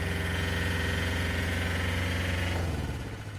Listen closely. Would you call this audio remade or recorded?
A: remade